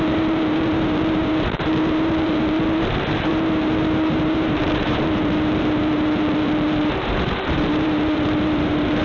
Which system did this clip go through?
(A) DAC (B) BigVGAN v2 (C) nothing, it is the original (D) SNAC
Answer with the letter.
B